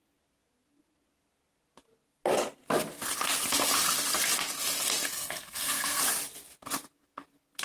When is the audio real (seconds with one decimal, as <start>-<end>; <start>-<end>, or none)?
0.0-5.1; 6.0-7.6